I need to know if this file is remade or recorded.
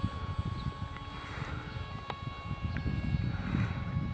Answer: recorded